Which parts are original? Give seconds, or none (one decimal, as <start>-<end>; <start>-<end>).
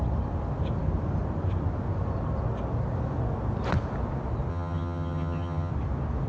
0.0-4.5; 5.7-6.3